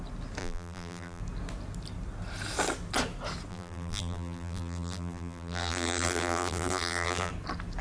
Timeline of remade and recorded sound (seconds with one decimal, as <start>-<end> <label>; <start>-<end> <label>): 0.0-0.4 recorded; 0.4-1.2 remade; 1.2-3.5 recorded; 3.5-7.3 remade; 7.3-7.8 recorded